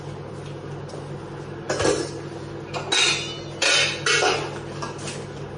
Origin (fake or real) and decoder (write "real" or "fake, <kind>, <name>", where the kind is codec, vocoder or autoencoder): real